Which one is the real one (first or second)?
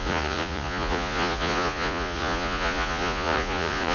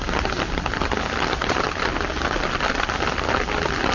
second